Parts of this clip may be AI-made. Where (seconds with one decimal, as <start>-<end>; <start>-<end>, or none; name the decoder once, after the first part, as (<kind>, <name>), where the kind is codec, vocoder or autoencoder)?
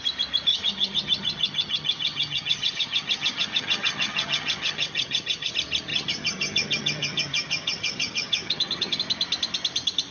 0.5-5.5 (vocoder, HiFi-GAN); 5.9-9.0